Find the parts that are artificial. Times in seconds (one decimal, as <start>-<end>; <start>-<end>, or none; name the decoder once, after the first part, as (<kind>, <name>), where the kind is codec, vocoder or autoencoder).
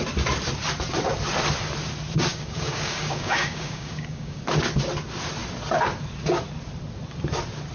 2.3-4.4 (codec, DAC)